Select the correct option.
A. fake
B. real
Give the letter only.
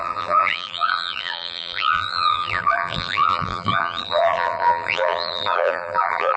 A